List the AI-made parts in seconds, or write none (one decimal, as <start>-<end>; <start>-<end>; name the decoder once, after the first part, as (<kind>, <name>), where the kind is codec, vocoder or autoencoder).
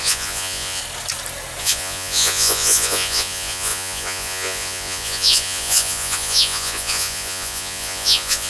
0.0-0.8 (vocoder, Vocos); 1.6-8.5